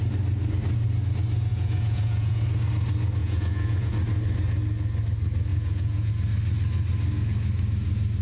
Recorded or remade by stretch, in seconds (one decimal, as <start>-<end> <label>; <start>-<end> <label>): 0.0-1.5 recorded; 1.5-2.4 remade; 2.4-3.2 recorded; 3.2-3.9 remade; 3.9-5.5 recorded; 5.5-6.1 remade; 6.1-8.2 recorded